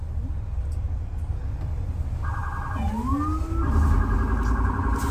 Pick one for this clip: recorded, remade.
recorded